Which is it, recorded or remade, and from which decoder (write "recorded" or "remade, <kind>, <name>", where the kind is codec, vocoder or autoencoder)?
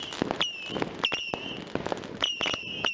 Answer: recorded